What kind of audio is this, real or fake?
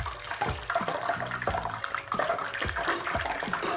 real